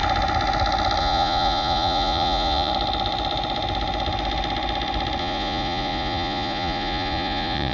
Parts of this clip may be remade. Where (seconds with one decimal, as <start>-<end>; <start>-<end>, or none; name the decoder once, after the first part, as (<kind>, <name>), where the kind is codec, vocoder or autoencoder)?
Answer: 1.0-2.7 (vocoder, Vocos); 5.2-7.7